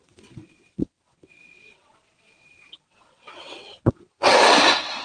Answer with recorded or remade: remade